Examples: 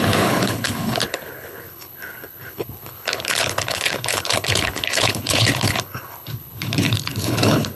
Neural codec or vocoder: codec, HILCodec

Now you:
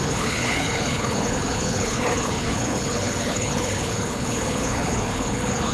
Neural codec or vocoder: codec, HILCodec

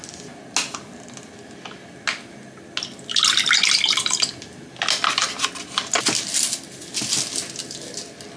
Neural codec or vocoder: none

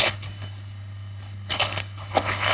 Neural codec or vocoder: codec, HILCodec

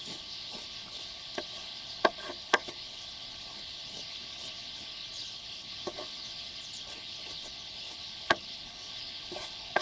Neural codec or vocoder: codec, HILCodec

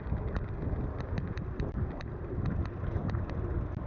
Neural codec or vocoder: none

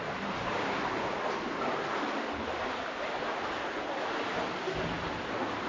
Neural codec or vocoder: none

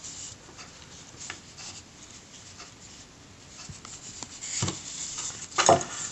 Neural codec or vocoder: none